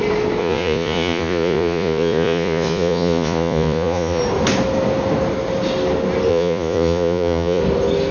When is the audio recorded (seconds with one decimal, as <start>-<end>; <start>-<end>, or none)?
0.0-0.4; 4.2-6.3; 7.6-8.1